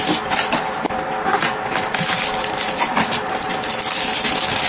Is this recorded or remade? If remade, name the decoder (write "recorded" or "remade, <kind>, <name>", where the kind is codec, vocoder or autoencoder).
recorded